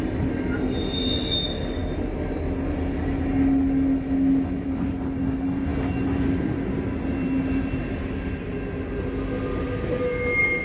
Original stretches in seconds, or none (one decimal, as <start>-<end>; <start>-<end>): 0.0-10.6